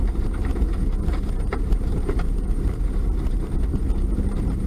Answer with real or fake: fake